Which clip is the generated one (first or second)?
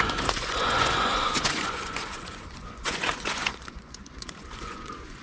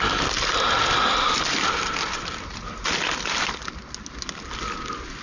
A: first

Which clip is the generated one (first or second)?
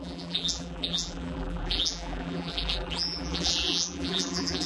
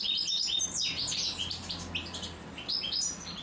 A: first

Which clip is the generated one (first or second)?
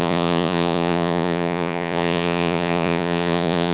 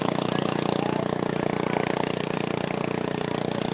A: first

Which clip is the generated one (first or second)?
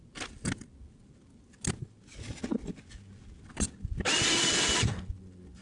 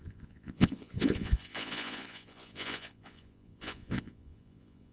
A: second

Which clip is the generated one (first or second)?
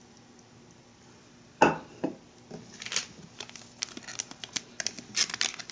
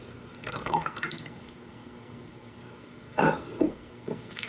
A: second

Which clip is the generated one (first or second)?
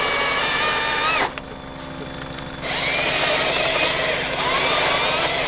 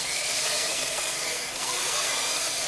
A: second